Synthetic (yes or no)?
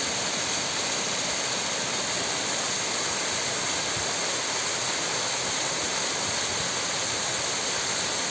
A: no